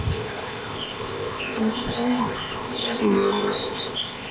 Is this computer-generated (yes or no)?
yes